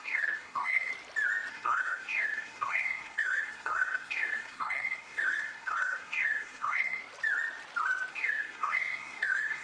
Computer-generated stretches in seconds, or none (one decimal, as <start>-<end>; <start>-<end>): 0.0-0.9; 1.5-7.0; 8.1-9.6